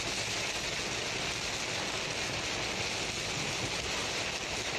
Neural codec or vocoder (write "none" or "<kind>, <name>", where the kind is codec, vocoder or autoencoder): none